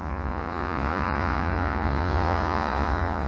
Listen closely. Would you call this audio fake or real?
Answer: fake